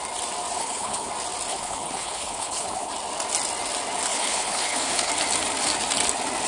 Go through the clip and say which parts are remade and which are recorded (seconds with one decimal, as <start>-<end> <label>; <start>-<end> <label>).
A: 0.0-0.6 recorded; 0.6-1.1 remade; 1.1-1.5 recorded; 1.5-2.9 remade; 2.9-4.1 recorded; 4.1-5.1 remade; 5.1-6.5 recorded